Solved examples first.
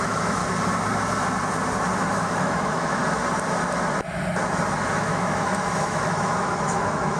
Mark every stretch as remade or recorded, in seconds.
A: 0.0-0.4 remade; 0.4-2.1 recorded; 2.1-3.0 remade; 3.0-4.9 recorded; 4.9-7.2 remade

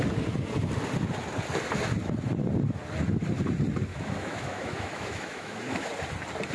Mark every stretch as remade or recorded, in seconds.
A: 0.0-3.9 recorded; 3.9-5.9 remade; 5.9-6.5 recorded

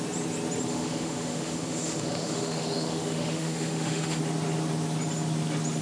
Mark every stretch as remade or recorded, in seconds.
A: 0.0-0.7 recorded; 0.7-4.2 remade; 4.2-5.8 recorded

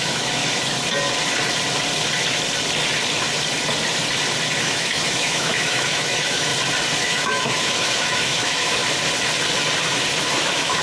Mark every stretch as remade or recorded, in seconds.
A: 0.0-0.4 remade; 0.4-4.6 recorded; 4.6-6.5 remade; 6.5-7.0 recorded; 7.0-8.8 remade; 8.8-10.4 recorded; 10.4-10.8 remade